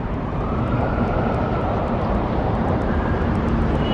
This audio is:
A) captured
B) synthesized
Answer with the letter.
B